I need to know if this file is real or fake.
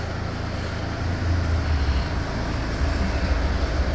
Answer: real